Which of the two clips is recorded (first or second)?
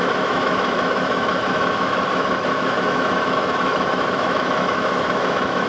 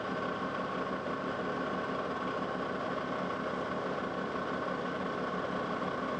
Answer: second